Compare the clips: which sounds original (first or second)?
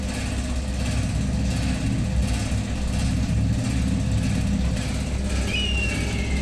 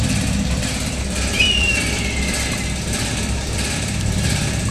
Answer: first